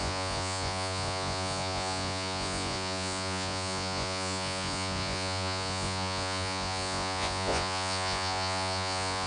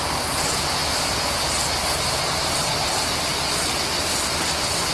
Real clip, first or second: second